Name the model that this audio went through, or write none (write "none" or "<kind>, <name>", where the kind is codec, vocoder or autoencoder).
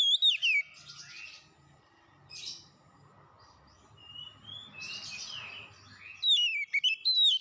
none